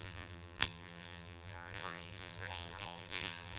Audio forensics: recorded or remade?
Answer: remade